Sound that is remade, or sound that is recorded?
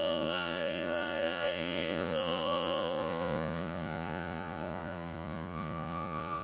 remade